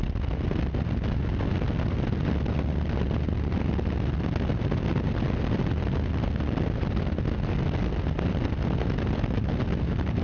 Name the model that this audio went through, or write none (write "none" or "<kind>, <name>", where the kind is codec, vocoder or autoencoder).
none